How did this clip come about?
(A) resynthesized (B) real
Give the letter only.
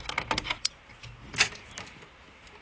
B